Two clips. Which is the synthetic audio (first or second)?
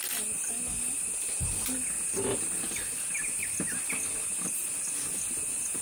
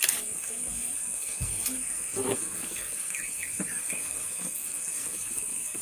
second